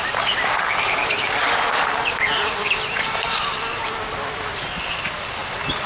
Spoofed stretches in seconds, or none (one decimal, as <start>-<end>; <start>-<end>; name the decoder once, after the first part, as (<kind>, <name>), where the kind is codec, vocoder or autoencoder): 1.0-4.5 (vocoder, BigVGAN v2); 5.4-5.9

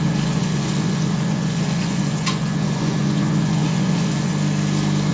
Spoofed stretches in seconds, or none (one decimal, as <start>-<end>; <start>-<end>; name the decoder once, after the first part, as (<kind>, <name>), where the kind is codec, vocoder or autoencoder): 0.0-4.3 (vocoder, Vocos)

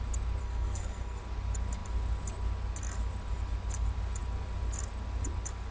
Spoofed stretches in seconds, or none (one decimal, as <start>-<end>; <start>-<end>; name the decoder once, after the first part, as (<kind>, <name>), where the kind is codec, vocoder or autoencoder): 0.4-1.2 (codec, SNAC)